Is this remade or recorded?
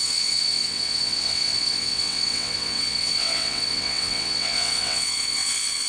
remade